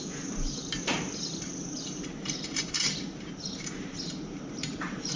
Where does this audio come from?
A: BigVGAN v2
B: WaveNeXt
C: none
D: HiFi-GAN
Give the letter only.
A